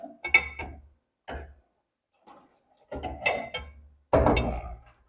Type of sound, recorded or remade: recorded